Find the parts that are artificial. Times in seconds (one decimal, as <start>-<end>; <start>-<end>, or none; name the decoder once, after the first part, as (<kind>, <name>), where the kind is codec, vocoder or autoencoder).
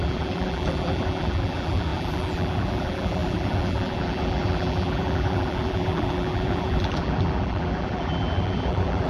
0.0-9.1 (vocoder, BigVGAN v2)